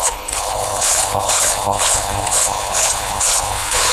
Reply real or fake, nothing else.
fake